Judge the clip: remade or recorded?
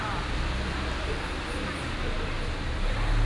recorded